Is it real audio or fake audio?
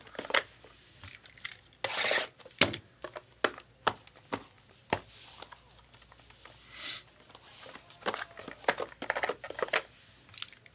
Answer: real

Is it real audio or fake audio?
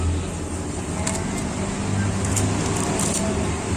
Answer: real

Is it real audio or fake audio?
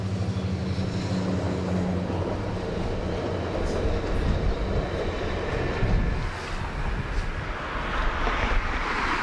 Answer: real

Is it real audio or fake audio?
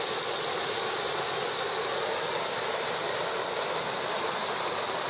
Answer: real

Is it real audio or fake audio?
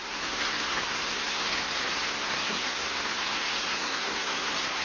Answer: fake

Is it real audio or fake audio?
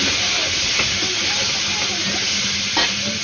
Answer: real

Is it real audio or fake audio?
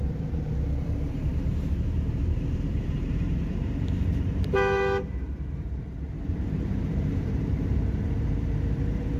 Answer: fake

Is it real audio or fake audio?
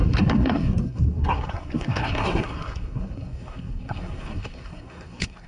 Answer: fake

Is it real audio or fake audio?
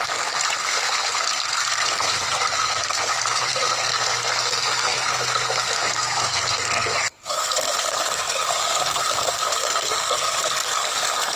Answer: fake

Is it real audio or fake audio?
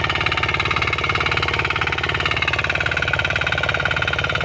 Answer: real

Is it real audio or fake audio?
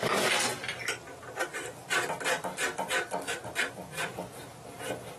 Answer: real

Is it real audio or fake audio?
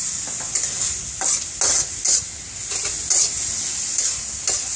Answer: real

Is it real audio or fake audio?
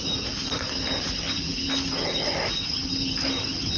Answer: real